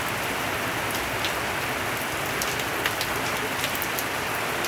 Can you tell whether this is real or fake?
real